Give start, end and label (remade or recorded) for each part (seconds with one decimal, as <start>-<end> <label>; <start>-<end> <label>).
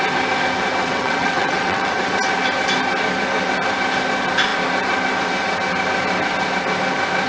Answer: 0.0-0.8 recorded; 0.8-2.1 remade; 2.1-7.3 recorded